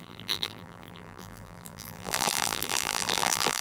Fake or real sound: fake